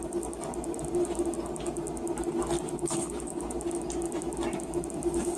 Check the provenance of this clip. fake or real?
real